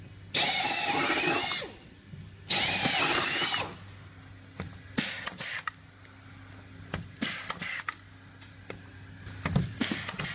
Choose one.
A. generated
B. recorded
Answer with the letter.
B